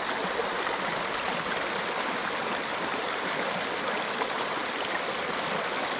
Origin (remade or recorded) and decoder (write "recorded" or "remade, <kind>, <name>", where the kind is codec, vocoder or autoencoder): recorded